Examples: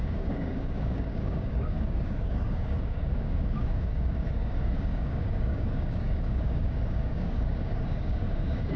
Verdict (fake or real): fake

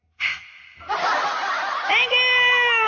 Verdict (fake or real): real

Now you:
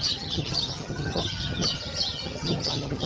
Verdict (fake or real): fake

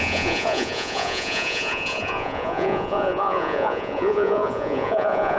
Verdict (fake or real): fake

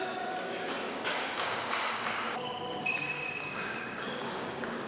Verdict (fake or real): fake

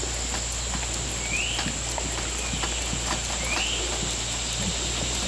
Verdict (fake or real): real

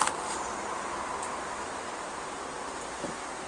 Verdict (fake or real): real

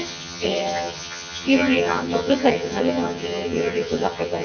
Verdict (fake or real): fake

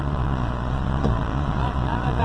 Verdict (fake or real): fake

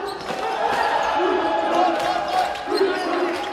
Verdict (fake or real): real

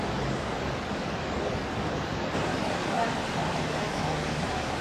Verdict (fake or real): fake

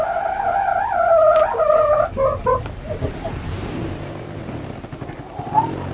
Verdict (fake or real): real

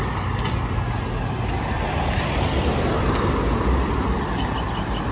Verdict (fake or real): real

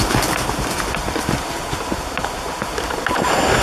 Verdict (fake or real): real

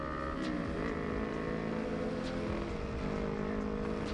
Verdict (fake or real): real